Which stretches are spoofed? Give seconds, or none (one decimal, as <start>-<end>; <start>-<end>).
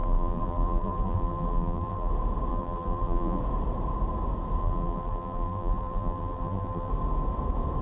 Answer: 0.0-2.1; 2.5-3.4; 4.6-6.9